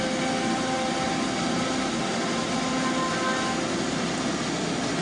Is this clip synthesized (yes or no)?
no